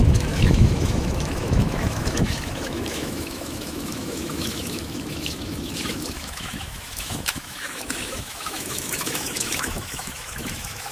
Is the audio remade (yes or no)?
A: yes